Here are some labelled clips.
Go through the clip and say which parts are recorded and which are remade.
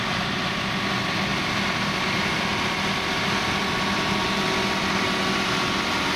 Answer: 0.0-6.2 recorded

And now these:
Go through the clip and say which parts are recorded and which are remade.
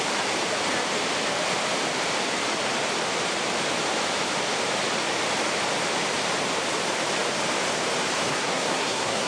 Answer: 0.0-8.3 recorded; 8.3-9.3 remade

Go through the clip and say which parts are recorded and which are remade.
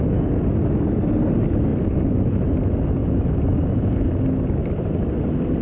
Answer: 0.0-1.7 recorded; 1.7-2.4 remade; 2.4-3.0 recorded; 3.0-5.6 remade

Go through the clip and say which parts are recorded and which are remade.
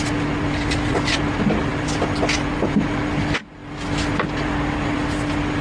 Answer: 0.0-5.6 recorded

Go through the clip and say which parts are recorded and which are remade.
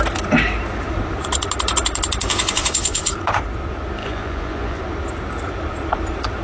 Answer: 0.0-2.3 recorded; 2.3-3.1 remade; 3.1-4.0 recorded; 4.0-4.8 remade; 4.8-6.4 recorded